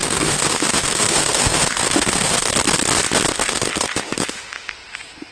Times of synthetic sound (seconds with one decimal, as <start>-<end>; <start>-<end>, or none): 0.0-2.5; 3.3-5.3